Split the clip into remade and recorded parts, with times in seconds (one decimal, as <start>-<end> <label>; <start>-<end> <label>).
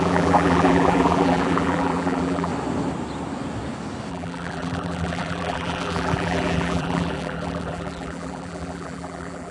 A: 0.0-2.5 remade; 2.5-4.1 recorded; 4.1-9.5 remade